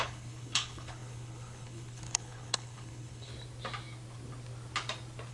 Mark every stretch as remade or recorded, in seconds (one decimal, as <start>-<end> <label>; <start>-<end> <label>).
0.0-3.3 remade; 3.3-5.3 recorded